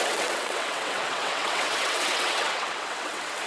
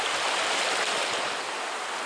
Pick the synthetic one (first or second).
first